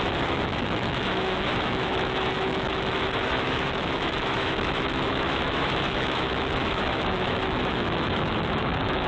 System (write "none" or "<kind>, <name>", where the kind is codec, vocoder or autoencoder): autoencoder, DAC-VAE